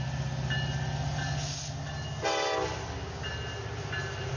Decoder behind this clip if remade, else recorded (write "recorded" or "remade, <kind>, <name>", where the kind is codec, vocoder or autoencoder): recorded